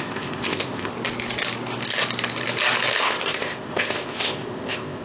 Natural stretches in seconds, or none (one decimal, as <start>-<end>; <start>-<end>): 0.9-3.0

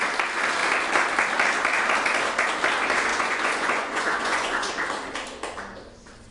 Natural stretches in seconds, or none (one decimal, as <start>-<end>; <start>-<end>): 0.0-3.1; 4.7-6.3

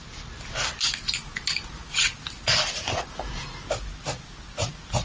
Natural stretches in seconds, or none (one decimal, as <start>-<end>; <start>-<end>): 0.0-5.0